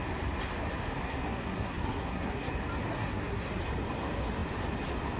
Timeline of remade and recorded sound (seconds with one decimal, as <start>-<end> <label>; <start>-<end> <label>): 0.0-1.1 recorded; 1.1-2.5 remade; 2.5-2.9 recorded; 2.9-3.6 remade; 3.6-5.2 recorded